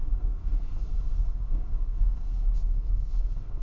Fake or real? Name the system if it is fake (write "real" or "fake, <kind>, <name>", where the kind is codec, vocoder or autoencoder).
fake, codec, SNAC